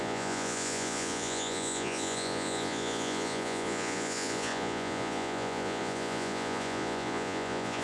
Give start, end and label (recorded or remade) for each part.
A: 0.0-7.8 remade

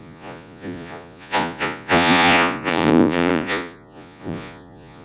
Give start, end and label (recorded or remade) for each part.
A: 0.0-5.0 remade

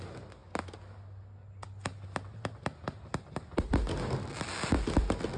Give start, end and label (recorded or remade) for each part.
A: 0.0-5.4 recorded

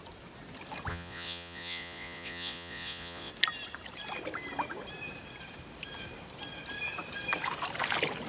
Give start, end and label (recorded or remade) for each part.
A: 0.0-0.9 recorded; 0.9-3.3 remade; 3.3-8.3 recorded